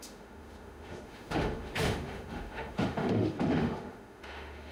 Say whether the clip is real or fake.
fake